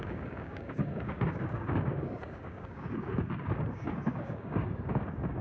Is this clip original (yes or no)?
no